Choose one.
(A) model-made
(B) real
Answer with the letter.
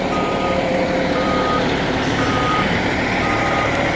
A